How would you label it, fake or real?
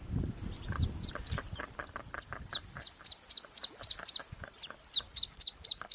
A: real